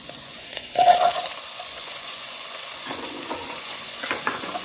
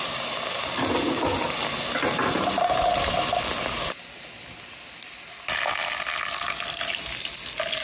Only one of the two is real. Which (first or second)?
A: second